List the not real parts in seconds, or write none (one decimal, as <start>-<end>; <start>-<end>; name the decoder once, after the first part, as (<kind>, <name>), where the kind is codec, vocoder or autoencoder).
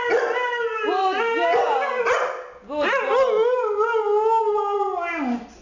none